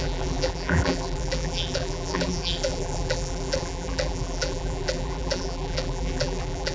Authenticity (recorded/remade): remade